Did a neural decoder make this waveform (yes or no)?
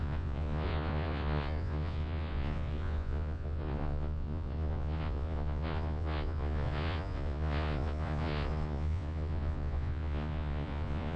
yes